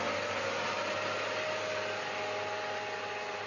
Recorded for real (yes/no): yes